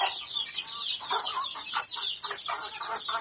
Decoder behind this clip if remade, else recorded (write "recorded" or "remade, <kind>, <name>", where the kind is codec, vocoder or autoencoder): recorded